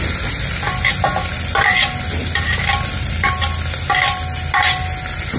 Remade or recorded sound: recorded